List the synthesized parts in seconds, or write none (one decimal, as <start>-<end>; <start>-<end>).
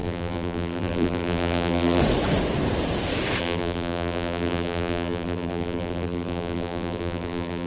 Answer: 0.0-2.0; 3.4-7.7